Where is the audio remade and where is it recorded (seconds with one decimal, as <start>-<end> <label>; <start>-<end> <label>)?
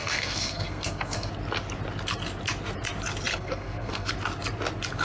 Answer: 0.0-1.3 remade; 1.3-3.3 recorded; 3.3-4.1 remade; 4.1-5.0 recorded